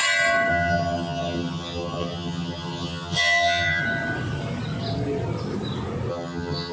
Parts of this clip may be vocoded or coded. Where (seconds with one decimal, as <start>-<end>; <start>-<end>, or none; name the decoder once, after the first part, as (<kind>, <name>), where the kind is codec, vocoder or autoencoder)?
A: 0.5-3.8 (vocoder, HiFi-GAN); 6.1-6.7

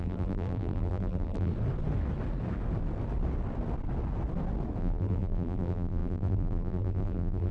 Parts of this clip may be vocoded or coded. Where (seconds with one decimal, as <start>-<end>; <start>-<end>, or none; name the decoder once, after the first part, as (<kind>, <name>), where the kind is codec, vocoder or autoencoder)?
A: 0.0-1.5 (vocoder, BigVGAN v2); 4.8-7.5

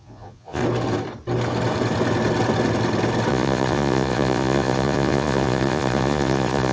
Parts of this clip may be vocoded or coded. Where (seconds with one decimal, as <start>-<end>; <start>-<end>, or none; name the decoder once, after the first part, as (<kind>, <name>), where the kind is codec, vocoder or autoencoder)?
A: 0.0-0.6 (vocoder, Vocos); 3.3-6.7

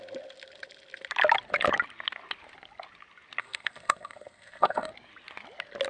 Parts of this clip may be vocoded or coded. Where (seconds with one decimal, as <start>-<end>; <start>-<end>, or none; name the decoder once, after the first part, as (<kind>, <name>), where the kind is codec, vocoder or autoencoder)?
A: 3.4-4.9 (codec, SNAC)

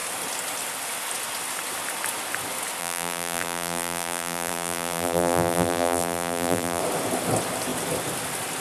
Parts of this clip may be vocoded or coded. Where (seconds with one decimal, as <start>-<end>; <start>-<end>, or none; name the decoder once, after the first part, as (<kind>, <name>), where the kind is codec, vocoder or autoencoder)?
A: 2.8-6.8 (vocoder, BigVGAN v2)